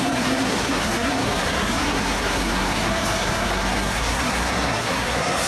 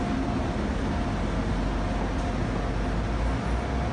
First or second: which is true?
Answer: second